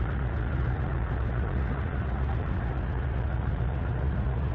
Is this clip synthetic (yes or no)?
yes